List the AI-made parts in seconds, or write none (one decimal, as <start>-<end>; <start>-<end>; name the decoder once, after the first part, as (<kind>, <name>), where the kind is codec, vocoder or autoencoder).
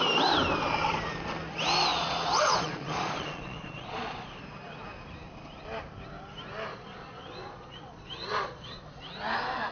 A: 1.9-4.4 (vocoder, Vocos); 6.7-8.8